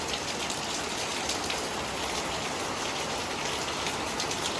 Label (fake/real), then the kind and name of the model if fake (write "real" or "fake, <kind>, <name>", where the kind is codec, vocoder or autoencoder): fake, vocoder, BigVGAN v2